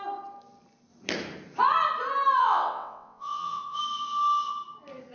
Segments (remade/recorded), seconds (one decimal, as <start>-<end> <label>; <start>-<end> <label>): 0.0-2.4 recorded; 2.4-3.8 remade; 3.8-5.1 recorded